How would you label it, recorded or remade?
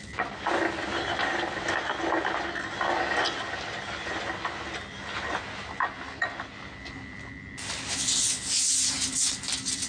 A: recorded